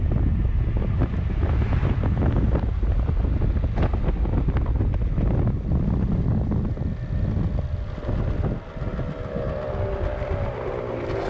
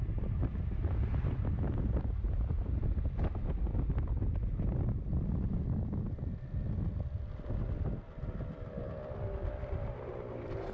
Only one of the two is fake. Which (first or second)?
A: second